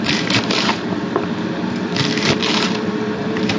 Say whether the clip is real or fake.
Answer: fake